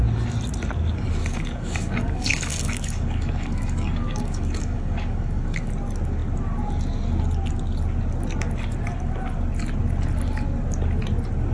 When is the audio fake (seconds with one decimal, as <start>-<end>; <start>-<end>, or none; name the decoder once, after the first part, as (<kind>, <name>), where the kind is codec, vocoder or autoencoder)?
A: 1.2-5.7 (codec, DAC)